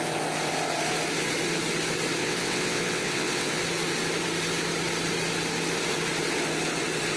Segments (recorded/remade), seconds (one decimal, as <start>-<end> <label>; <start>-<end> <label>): 0.0-2.2 recorded; 2.2-3.6 remade; 3.6-7.2 recorded